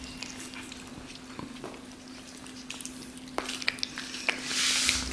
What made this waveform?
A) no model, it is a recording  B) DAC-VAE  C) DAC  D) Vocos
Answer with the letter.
A